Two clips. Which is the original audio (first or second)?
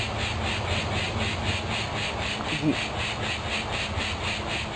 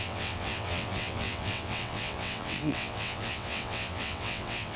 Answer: first